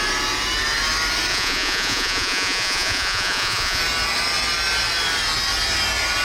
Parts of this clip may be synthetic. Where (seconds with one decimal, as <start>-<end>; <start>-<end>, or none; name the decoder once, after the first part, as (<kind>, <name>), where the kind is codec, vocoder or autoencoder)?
1.3-3.8 (vocoder, Vocos)